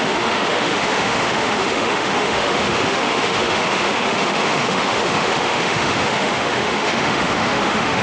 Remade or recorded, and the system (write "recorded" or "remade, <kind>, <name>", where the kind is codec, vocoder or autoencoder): remade, autoencoder, DAC-VAE